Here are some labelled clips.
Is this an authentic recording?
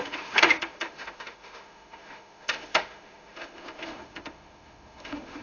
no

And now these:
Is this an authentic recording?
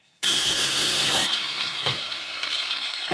no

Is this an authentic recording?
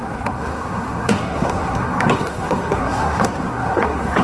no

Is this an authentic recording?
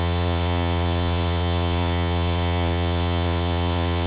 no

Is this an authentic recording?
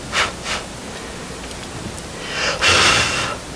yes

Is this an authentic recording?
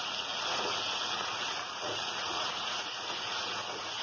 no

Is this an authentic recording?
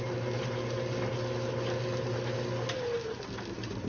yes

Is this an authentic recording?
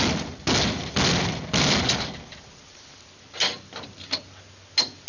yes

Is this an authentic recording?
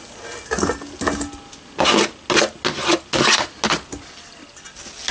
yes